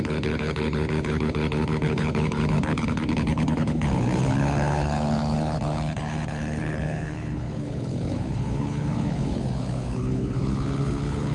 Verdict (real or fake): fake